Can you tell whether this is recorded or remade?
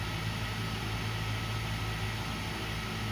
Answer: recorded